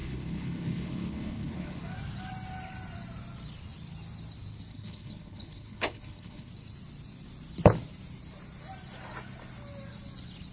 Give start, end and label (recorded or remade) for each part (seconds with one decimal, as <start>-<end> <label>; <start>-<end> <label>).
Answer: 0.0-1.8 remade; 1.8-4.7 recorded; 4.7-6.5 remade; 6.5-10.5 recorded